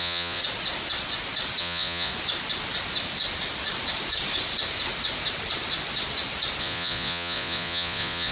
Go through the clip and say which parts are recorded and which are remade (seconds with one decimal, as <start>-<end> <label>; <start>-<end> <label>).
0.0-0.4 remade; 0.4-1.6 recorded; 1.6-2.1 remade; 2.1-6.6 recorded; 6.6-8.3 remade